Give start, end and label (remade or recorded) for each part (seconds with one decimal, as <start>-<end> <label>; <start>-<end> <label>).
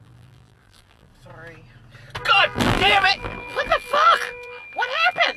0.0-1.1 remade; 1.1-2.4 recorded; 2.4-5.4 remade